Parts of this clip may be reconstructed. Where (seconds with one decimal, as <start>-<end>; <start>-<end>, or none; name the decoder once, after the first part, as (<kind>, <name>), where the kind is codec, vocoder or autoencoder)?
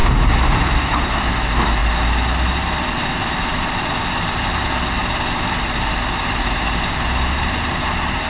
none